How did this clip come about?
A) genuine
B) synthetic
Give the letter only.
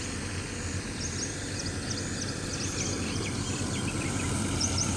A